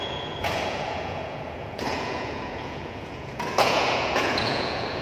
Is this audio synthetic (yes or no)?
yes